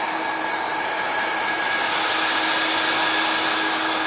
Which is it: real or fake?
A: real